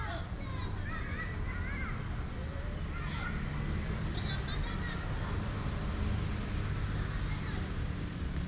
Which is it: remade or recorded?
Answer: recorded